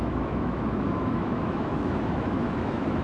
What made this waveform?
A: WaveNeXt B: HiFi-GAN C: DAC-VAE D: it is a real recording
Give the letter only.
C